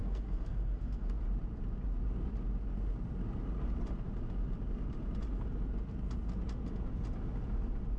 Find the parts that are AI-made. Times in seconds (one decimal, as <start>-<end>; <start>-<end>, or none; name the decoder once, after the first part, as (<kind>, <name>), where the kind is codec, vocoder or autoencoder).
0.0-1.2 (codec, SNAC)